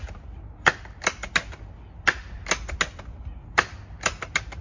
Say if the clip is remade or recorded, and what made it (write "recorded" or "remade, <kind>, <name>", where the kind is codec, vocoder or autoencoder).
recorded